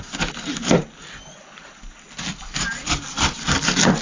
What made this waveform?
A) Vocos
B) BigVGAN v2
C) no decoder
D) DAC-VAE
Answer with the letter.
B